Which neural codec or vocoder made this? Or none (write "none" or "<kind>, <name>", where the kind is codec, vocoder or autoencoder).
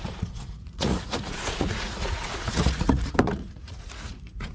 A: vocoder, Vocos